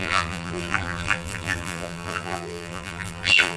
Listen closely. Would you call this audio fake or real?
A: fake